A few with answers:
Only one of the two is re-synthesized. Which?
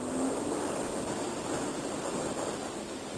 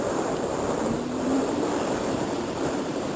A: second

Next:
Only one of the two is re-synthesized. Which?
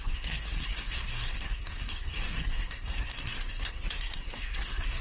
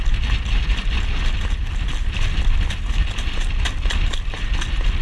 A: first